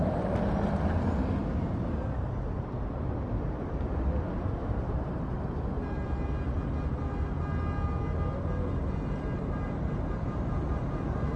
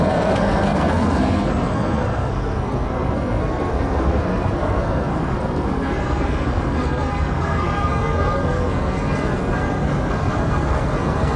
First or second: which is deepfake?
second